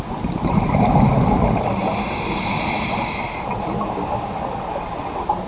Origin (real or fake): real